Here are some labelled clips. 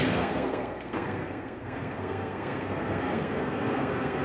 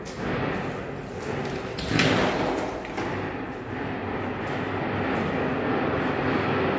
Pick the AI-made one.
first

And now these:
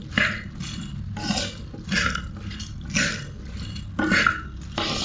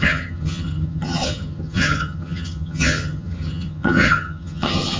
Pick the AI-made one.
second